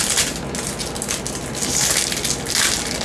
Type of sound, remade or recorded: recorded